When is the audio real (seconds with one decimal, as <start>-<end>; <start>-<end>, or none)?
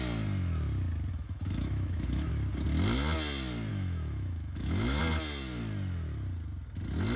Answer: 0.0-1.1; 2.3-3.7; 5.0-7.2